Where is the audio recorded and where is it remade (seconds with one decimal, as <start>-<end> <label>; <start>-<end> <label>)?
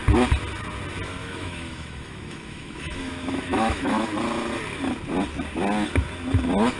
0.0-1.2 recorded; 1.2-4.1 remade; 4.1-6.8 recorded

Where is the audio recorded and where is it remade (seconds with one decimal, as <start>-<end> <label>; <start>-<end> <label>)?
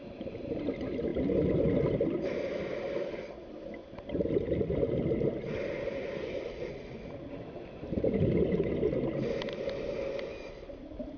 0.0-11.2 recorded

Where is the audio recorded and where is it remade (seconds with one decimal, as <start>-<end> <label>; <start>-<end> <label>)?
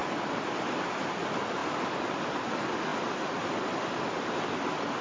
0.0-5.0 recorded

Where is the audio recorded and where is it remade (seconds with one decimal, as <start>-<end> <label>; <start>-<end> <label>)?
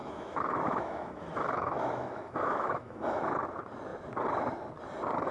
0.0-3.2 remade; 3.2-5.3 recorded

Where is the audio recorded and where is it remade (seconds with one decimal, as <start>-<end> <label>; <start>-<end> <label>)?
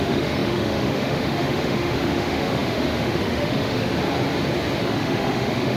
0.0-3.9 remade; 3.9-4.8 recorded; 4.8-5.8 remade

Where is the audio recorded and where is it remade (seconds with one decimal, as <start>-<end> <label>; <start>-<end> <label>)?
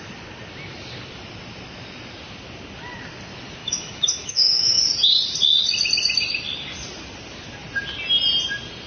0.0-3.6 recorded; 3.6-4.8 remade; 4.8-8.9 recorded